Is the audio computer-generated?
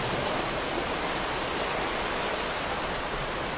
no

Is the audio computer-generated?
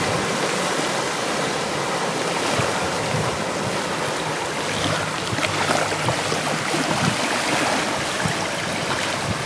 no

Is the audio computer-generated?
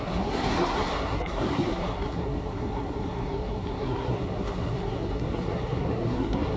yes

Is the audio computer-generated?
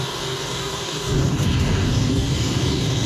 yes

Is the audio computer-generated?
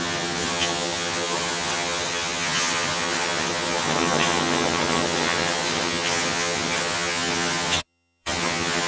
yes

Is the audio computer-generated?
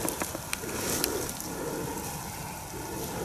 no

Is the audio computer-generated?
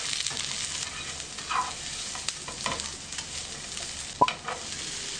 no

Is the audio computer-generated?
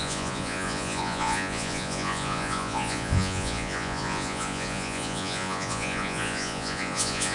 yes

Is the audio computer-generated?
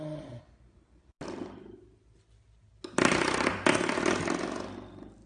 no